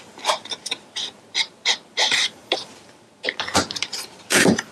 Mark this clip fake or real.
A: fake